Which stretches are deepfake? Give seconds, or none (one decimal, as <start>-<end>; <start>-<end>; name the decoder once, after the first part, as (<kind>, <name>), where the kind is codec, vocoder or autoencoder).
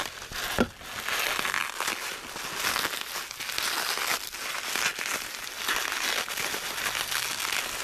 none